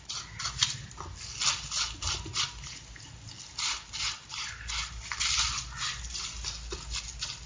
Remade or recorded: recorded